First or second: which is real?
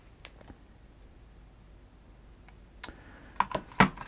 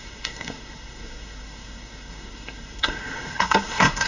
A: first